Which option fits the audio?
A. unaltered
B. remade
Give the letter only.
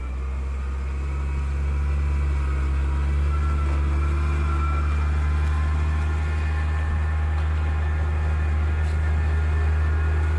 A